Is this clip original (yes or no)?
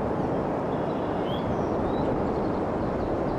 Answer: no